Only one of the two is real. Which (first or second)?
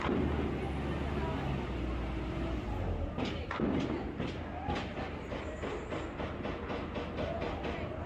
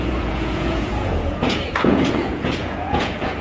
first